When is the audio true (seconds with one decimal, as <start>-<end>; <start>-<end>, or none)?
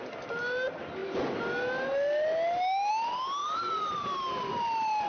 0.0-3.4; 4.2-5.1